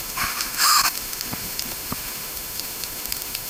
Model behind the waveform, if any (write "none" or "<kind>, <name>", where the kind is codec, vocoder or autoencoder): autoencoder, DAC-VAE